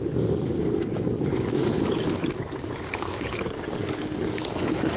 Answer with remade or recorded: remade